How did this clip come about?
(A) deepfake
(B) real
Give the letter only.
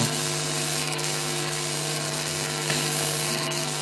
A